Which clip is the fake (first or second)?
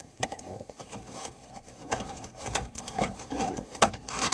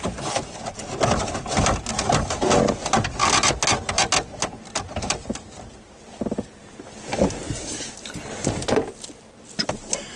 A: first